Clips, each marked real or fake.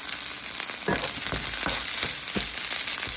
real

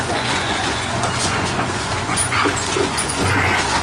fake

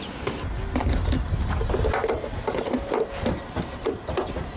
real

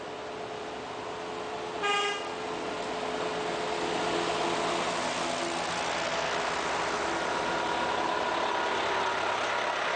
real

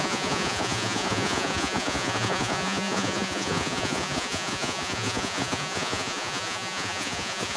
fake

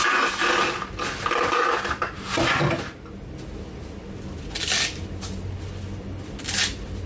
real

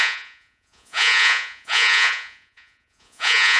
fake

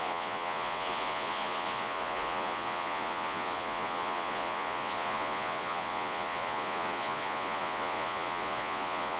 fake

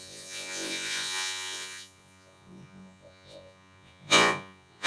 fake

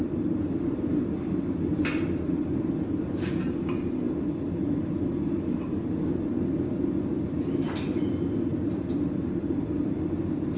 real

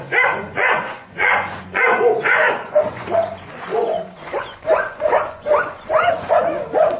fake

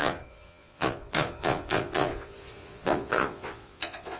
fake